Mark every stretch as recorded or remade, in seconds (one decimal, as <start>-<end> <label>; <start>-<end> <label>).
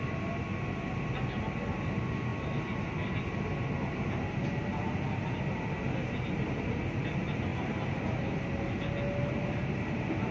0.0-10.3 recorded